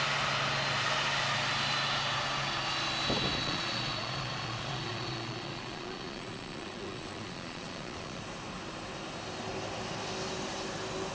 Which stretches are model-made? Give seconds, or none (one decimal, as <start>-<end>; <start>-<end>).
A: 3.4-8.2